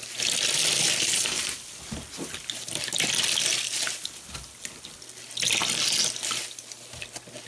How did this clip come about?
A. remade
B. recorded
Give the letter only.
B